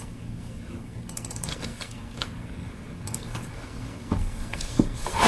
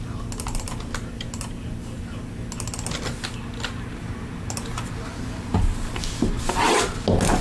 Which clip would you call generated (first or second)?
first